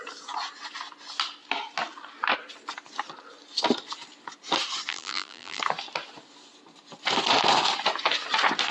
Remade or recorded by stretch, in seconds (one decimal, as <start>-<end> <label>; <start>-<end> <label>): 0.0-4.9 recorded; 4.9-5.6 remade; 5.6-8.7 recorded